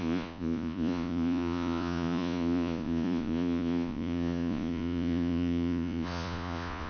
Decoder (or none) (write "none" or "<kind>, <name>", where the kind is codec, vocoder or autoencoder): vocoder, Vocos